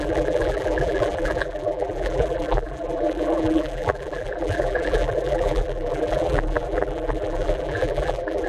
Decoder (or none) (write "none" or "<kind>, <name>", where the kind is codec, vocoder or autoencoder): vocoder, BigVGAN v2